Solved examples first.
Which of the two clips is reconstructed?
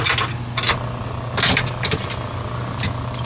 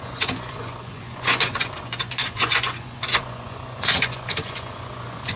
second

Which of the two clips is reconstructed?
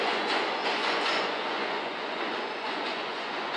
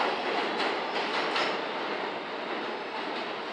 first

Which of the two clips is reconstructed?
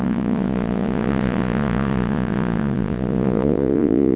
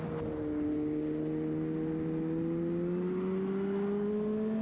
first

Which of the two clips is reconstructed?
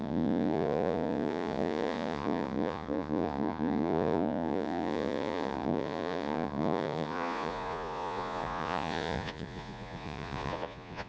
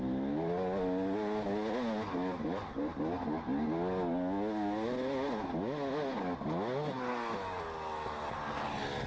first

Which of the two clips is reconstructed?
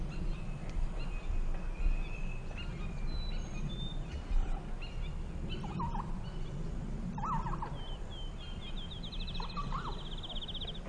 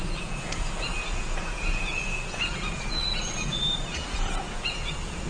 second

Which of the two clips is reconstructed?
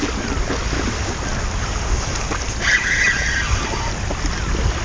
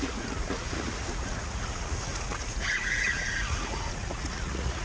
second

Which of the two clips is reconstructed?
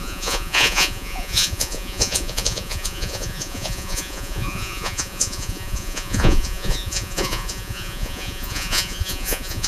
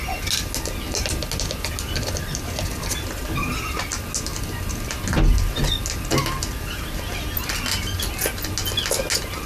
first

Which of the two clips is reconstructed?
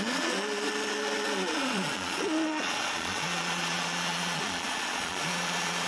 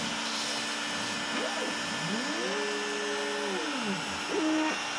first